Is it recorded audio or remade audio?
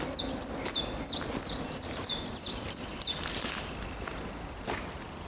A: recorded